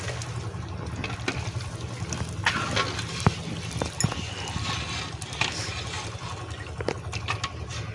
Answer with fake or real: real